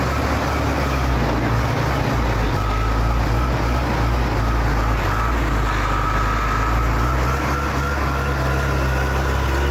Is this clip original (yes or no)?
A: yes